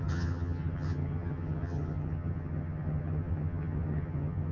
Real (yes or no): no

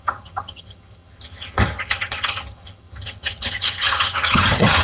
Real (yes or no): no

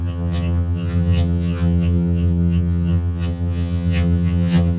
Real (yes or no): no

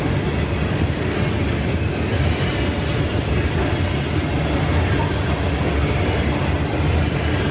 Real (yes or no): yes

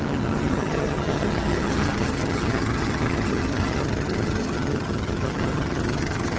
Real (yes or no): no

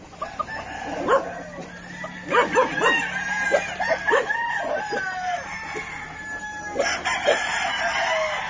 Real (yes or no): yes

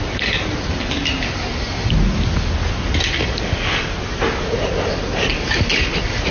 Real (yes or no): yes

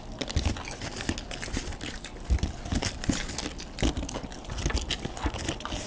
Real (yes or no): yes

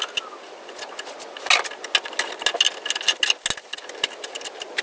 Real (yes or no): yes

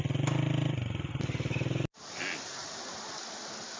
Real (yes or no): yes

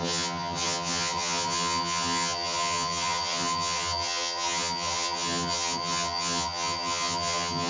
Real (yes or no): no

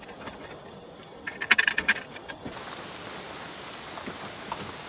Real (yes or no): yes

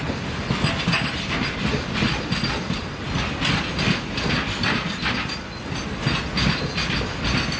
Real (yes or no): yes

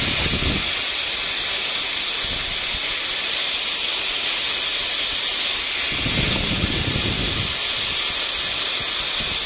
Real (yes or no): yes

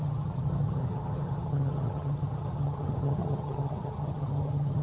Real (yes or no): no